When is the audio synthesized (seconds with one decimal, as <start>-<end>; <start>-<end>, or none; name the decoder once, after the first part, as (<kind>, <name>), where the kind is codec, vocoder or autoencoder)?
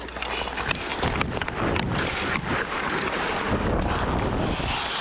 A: none